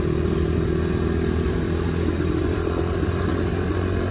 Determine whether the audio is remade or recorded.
recorded